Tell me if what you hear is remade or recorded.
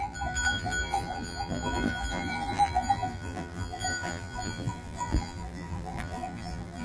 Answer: remade